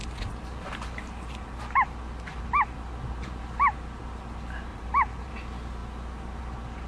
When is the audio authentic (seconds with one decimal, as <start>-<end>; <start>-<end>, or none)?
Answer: 0.0-4.7; 5.3-6.9